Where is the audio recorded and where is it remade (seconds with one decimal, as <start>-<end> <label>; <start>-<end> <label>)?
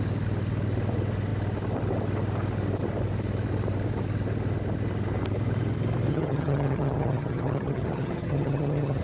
0.0-6.1 recorded; 6.1-9.0 remade